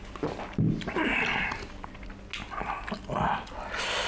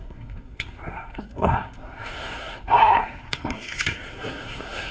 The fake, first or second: second